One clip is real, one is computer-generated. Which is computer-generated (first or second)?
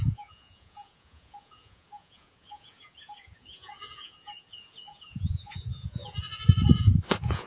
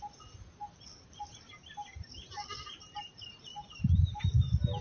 first